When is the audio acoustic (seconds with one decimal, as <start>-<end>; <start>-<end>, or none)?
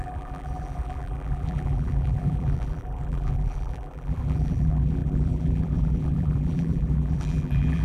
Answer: none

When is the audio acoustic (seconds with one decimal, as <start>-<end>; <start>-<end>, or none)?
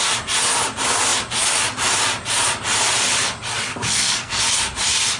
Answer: 0.0-3.7; 4.4-5.2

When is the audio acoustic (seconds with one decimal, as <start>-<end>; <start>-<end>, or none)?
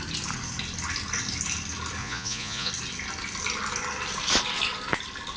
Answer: 0.0-2.0; 2.7-5.4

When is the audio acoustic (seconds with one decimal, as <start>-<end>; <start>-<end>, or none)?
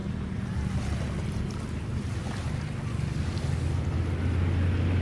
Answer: 2.2-5.0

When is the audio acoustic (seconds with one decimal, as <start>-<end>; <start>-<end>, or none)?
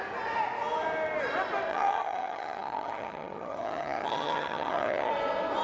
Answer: 0.0-1.7; 5.1-5.6